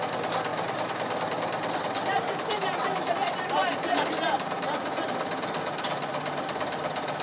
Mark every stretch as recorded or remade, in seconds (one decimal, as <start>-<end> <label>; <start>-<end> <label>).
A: 0.0-0.5 recorded; 0.5-3.1 remade; 3.1-7.2 recorded